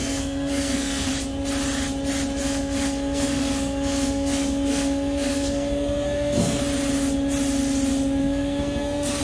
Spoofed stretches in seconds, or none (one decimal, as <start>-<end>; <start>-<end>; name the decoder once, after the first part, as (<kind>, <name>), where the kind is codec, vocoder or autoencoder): 0.0-1.1 (codec, SNAC); 2.4-6.6; 8.2-9.2

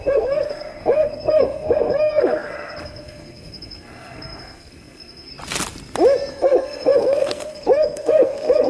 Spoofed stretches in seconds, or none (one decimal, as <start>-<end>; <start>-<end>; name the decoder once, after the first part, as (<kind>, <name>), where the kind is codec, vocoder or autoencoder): 0.0-5.3 (codec, SNAC); 6.3-8.7

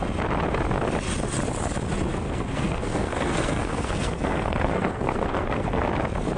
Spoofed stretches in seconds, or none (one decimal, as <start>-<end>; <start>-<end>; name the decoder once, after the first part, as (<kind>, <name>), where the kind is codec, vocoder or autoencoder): 2.1-5.9 (codec, SNAC)

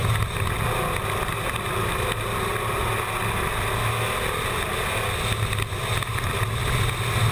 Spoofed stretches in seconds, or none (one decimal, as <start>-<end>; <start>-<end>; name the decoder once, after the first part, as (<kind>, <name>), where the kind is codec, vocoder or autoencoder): none

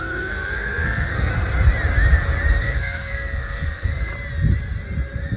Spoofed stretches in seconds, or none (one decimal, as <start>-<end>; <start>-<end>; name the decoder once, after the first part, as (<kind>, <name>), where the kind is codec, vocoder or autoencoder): 0.0-1.3 (codec, SNAC); 2.6-4.1

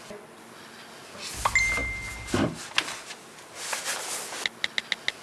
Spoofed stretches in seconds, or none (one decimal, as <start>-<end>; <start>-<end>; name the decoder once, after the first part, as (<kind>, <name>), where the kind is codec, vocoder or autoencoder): none

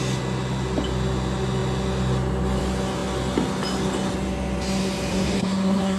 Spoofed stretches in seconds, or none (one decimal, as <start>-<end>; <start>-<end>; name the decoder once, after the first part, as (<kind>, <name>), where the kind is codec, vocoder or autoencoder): 5.1-6.0 (codec, SNAC)

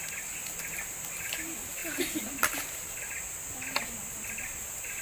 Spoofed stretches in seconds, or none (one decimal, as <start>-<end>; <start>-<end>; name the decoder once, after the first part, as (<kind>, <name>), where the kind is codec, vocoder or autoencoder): none